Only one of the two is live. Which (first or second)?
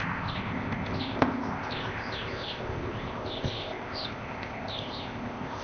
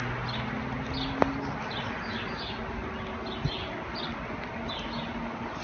second